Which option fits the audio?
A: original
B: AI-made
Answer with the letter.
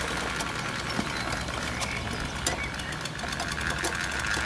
A